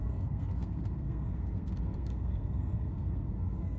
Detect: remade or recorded remade